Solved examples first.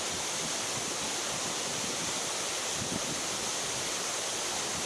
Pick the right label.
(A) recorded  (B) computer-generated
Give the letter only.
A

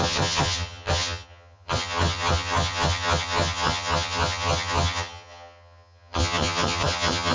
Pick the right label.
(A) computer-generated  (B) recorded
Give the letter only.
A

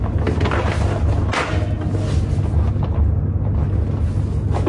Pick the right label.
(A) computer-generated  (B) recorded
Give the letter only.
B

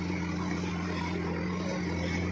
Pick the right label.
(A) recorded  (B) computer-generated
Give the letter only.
A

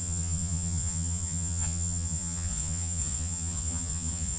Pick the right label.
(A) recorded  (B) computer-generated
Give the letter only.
B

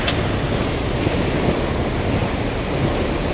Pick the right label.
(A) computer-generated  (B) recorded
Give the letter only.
B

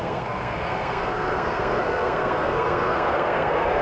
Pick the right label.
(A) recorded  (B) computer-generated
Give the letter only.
B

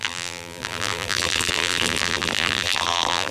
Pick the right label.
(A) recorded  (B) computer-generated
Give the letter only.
B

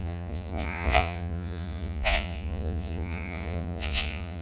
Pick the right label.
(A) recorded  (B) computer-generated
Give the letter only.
B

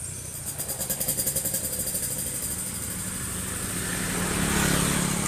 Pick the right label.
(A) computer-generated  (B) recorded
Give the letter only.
B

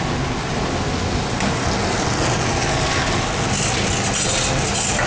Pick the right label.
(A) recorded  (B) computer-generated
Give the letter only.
A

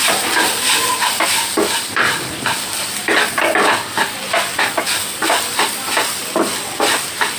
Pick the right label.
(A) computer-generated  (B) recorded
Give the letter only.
A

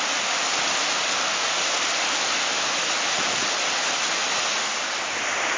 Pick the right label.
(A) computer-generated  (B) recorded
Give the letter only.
B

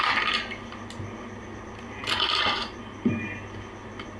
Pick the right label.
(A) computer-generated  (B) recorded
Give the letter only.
B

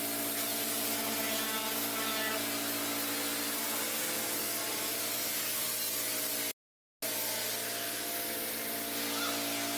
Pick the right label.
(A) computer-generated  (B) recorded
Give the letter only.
B